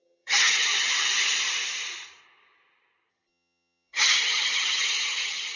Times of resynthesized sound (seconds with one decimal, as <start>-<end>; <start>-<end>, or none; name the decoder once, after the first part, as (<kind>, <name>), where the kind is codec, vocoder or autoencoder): 0.0-0.7 (vocoder, HiFi-GAN); 3.1-5.6